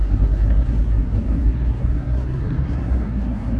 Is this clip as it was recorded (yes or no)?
no